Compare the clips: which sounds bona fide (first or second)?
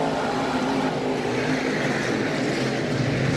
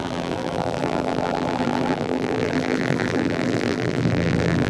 first